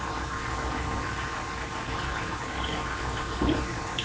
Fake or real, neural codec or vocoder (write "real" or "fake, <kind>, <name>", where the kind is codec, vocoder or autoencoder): fake, codec, DAC